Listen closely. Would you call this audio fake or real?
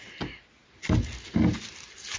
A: real